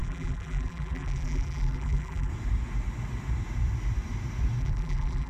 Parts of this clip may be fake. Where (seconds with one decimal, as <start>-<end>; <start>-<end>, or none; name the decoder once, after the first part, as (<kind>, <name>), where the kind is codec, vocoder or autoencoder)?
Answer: 0.0-2.3 (vocoder, BigVGAN v2); 4.6-5.3